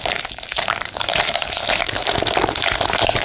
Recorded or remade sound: remade